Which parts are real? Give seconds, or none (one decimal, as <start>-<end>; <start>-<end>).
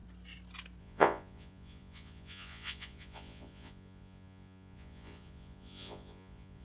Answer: 0.0-0.8